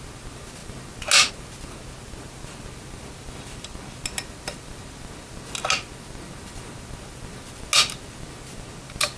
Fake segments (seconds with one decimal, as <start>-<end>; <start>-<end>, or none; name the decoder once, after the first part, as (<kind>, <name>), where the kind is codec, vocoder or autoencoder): none